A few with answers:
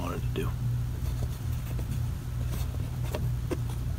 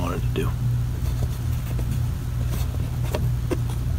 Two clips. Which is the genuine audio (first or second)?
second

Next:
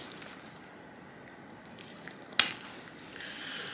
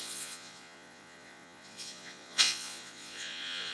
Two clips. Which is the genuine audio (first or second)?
first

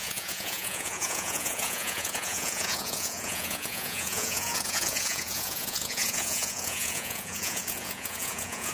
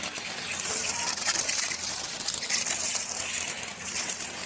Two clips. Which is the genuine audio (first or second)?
second